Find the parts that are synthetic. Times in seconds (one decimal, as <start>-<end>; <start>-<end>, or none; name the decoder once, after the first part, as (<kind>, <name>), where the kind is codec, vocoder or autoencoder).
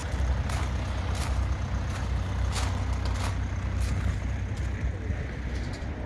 none